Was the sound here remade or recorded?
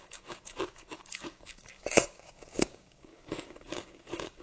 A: remade